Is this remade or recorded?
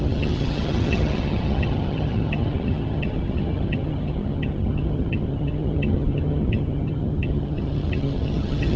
remade